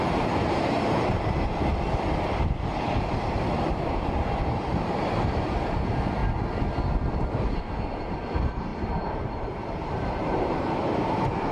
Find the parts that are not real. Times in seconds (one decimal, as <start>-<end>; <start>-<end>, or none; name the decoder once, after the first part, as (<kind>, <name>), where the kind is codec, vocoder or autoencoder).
0.0-1.7 (vocoder, BigVGAN v2); 4.7-6.2; 8.1-11.5

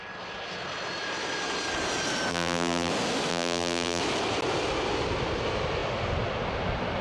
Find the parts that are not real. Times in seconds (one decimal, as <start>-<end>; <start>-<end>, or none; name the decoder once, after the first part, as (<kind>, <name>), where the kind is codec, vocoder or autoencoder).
2.3-2.9 (vocoder, BigVGAN v2); 3.3-4.0

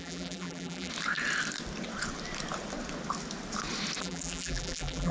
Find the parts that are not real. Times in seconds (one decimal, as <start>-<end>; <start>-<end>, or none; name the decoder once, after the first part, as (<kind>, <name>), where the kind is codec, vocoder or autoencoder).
0.0-0.9 (vocoder, BigVGAN v2); 4.0-5.1

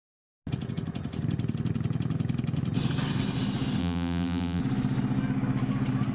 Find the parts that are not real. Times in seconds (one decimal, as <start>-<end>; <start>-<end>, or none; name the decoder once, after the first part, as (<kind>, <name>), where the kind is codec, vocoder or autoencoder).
3.8-4.6 (vocoder, BigVGAN v2)

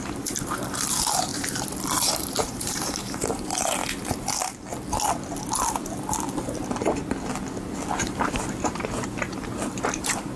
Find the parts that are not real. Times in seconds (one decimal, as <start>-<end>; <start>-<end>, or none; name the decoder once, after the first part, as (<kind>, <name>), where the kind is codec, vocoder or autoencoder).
0.0-3.8 (vocoder, BigVGAN v2); 7.9-10.4

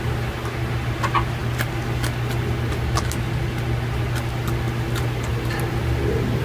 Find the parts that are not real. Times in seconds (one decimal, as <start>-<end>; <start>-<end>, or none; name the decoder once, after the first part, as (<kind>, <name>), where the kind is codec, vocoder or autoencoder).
5.3-5.8 (vocoder, BigVGAN v2)